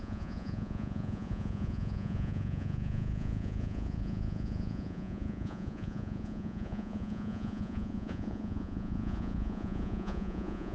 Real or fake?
fake